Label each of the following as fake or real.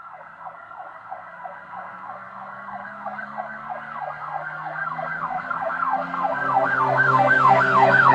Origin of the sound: fake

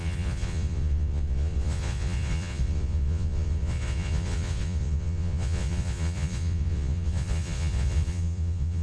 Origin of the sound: fake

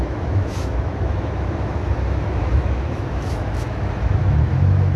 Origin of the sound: fake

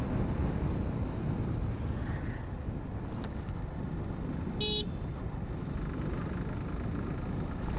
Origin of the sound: real